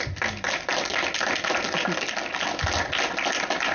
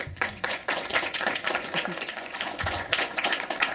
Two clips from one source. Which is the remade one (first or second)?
second